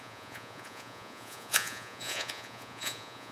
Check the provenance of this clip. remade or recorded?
remade